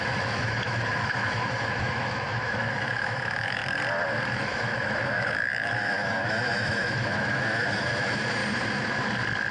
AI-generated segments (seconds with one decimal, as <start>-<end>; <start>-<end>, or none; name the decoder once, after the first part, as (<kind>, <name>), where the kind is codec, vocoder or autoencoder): 0.0-3.6 (autoencoder, DAC-VAE); 4.4-8.4